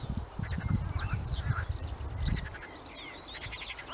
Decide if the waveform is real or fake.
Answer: real